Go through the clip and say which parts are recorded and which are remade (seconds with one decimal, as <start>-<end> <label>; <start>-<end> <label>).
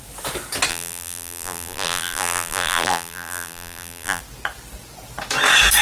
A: 0.0-0.7 recorded; 0.7-4.2 remade; 4.2-5.8 recorded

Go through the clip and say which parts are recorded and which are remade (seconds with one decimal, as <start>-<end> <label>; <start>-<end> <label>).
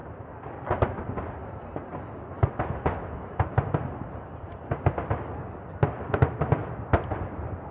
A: 0.0-7.7 recorded